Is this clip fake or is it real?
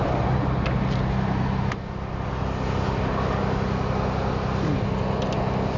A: real